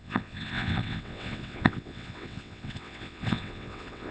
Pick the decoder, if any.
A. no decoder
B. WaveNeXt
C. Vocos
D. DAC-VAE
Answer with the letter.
B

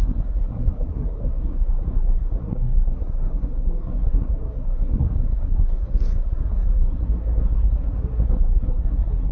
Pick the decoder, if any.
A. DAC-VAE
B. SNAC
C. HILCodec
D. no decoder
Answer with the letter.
B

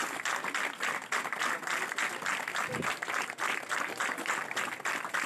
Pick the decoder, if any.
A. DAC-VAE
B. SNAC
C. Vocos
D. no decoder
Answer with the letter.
D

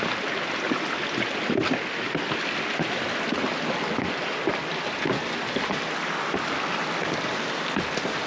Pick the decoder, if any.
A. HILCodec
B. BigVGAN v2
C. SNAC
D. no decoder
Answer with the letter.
D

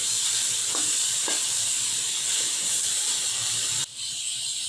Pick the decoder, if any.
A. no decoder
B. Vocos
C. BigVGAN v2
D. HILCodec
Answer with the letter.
C